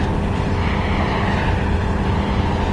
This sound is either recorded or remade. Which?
recorded